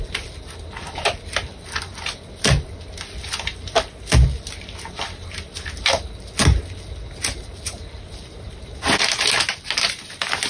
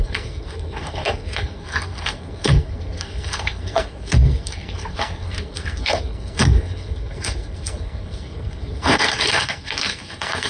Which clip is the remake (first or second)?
second